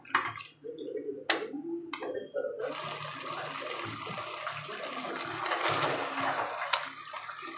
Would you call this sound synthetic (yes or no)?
no